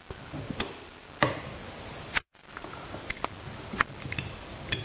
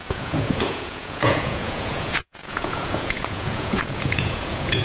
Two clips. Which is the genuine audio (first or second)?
first